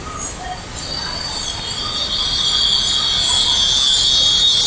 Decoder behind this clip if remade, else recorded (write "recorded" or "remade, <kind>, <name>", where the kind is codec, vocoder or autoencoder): recorded